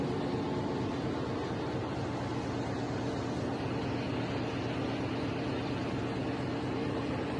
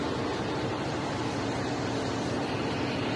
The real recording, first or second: first